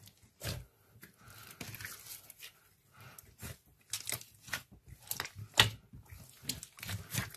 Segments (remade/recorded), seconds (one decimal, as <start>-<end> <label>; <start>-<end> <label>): 0.0-7.4 recorded